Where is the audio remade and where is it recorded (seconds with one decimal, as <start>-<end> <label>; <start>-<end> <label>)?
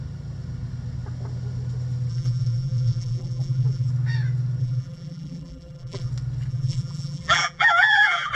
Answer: 0.0-2.1 recorded; 2.1-3.9 remade; 3.9-4.6 recorded; 4.6-6.1 remade; 6.1-6.5 recorded; 6.5-8.3 remade